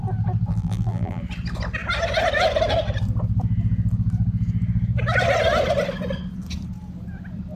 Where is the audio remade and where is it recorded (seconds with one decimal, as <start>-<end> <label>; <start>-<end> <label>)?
0.0-0.5 recorded; 0.5-1.2 remade; 1.2-7.6 recorded